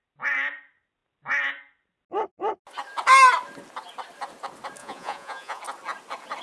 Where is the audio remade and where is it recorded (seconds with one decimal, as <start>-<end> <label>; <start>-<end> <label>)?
0.0-4.8 recorded; 4.8-5.6 remade; 5.6-6.4 recorded